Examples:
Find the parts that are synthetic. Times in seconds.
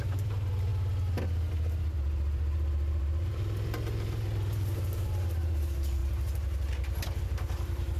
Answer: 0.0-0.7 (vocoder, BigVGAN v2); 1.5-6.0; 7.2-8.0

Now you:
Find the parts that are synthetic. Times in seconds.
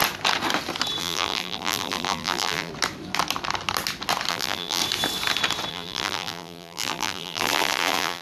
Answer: 1.0-2.7 (vocoder, BigVGAN v2); 4.3-4.8; 5.7-8.2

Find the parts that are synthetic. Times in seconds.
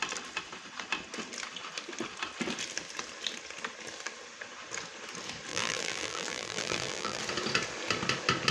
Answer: 5.5-7.2 (vocoder, BigVGAN v2)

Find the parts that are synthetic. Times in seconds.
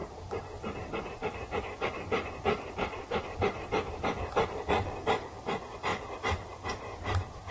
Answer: 0.0-3.9 (vocoder, BigVGAN v2); 5.9-7.5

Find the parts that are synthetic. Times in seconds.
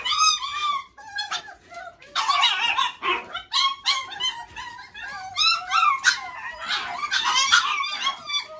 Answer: 0.6-1.4 (vocoder, BigVGAN v2)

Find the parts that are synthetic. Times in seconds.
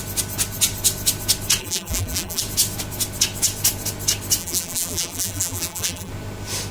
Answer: 1.6-2.4 (vocoder, BigVGAN v2); 4.4-6.1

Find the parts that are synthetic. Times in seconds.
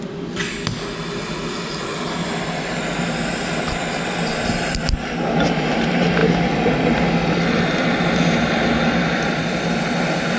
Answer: none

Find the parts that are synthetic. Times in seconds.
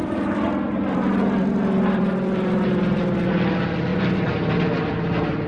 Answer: 0.0-3.3 (vocoder, BigVGAN v2); 3.9-4.9